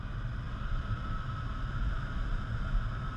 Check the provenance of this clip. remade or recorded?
recorded